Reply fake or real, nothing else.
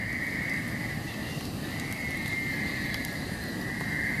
real